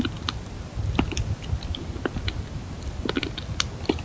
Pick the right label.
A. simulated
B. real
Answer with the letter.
B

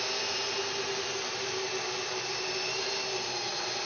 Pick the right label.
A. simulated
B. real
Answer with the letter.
B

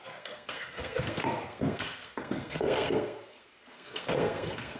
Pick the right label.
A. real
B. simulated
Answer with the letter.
B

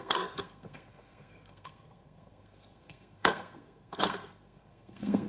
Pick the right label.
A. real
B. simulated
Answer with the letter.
B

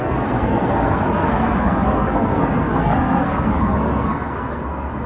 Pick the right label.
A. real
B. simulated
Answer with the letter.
B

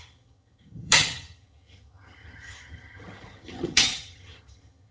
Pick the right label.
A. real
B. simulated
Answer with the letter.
B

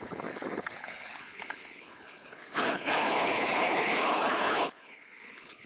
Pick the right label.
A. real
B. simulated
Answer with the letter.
B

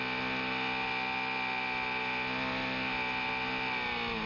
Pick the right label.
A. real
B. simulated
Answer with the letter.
A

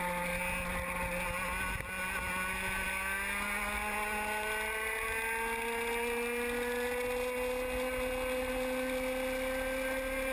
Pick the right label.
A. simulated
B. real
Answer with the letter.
B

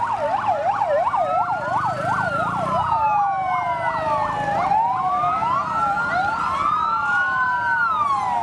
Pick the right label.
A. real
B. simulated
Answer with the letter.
A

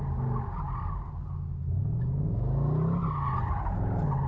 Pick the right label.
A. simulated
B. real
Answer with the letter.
B